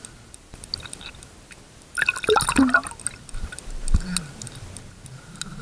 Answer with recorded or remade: recorded